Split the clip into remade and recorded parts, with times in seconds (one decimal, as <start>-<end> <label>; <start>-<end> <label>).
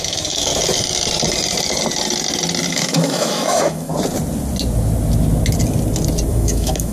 0.0-0.5 remade; 0.5-2.7 recorded; 2.7-3.9 remade; 3.9-6.3 recorded; 6.3-6.9 remade